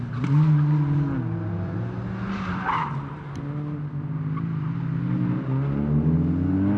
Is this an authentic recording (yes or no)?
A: yes